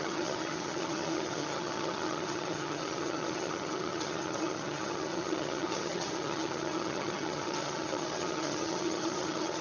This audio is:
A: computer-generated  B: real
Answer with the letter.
A